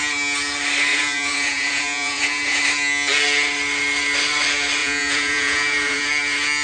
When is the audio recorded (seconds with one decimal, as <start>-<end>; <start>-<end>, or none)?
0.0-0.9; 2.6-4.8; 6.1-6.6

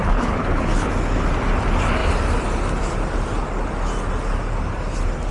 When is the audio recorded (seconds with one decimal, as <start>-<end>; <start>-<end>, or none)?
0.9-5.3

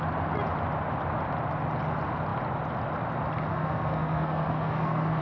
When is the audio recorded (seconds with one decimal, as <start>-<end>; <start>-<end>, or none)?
0.0-3.5

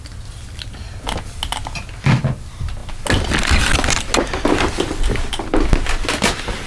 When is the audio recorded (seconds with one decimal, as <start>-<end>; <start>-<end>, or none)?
0.0-6.7

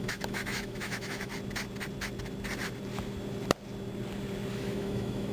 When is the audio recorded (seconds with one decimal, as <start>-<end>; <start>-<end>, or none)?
1.3-4.5